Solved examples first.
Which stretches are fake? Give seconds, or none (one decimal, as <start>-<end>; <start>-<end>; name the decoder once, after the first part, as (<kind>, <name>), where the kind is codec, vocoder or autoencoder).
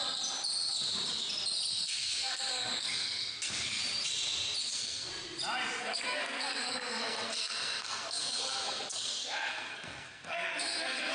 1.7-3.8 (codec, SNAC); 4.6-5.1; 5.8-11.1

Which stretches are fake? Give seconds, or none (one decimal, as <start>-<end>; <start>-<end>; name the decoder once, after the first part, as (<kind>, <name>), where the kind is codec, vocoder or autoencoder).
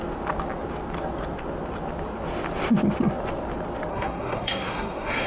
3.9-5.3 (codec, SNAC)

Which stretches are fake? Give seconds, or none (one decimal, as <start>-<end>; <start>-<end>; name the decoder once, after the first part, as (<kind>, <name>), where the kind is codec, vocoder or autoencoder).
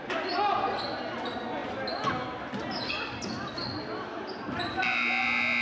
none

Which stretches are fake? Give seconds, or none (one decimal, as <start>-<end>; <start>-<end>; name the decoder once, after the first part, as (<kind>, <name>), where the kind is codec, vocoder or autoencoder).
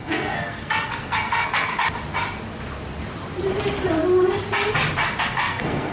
0.0-1.7 (codec, SNAC); 5.2-5.9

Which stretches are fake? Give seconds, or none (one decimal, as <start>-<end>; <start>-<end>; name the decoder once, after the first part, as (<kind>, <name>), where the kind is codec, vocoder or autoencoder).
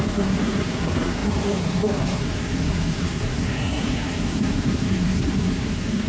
0.0-6.1 (codec, SNAC)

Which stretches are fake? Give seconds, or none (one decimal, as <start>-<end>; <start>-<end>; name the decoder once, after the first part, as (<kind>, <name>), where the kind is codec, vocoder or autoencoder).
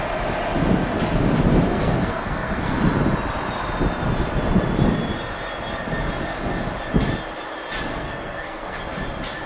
1.7-2.8 (codec, SNAC); 7.9-8.8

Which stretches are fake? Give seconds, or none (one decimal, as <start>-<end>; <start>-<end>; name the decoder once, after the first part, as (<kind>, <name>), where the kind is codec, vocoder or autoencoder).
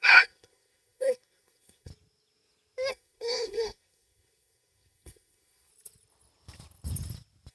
0.0-1.9 (codec, SNAC); 2.9-5.7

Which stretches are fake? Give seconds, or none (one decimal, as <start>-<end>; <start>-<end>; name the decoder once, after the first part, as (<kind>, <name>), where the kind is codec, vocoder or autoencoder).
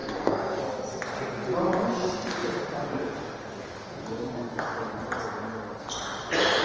0.0-0.6 (codec, SNAC)